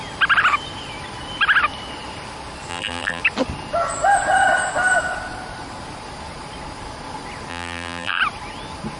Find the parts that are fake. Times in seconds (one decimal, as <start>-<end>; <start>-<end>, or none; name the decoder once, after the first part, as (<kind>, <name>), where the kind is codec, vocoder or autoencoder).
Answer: 2.7-3.2 (vocoder, BigVGAN v2); 7.5-8.2